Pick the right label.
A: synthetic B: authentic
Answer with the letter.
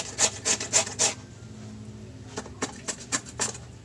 B